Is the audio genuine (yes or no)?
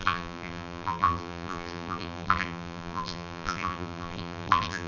no